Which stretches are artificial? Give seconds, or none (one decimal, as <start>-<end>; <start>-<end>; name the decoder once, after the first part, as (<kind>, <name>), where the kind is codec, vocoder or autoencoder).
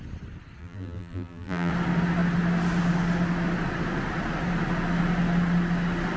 0.6-1.7 (vocoder, BigVGAN v2)